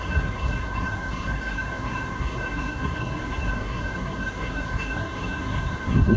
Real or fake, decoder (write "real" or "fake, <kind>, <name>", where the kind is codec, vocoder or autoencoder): fake, codec, SNAC